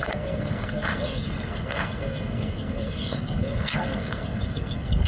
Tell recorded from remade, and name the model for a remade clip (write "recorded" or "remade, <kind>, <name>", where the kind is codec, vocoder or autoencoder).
remade, codec, SNAC